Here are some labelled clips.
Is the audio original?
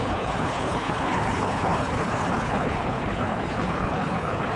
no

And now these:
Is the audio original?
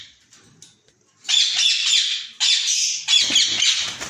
yes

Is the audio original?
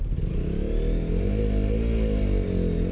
yes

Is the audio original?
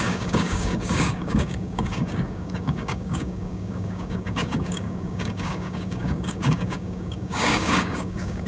no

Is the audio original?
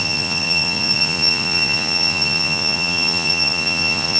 no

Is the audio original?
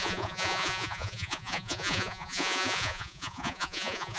no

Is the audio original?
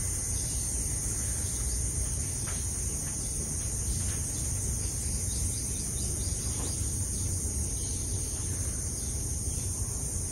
yes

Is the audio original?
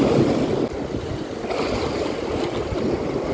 yes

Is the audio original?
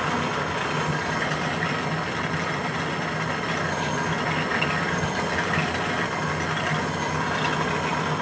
yes